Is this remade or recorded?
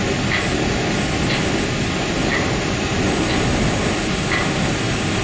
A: recorded